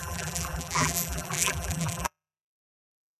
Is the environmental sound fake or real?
fake